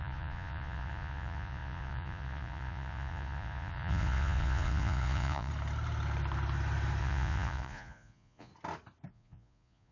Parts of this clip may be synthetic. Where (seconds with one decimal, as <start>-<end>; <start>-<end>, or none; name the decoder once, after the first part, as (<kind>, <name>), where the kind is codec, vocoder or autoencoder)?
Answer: 0.0-5.5 (vocoder, Vocos); 7.0-8.5; 9.1-9.9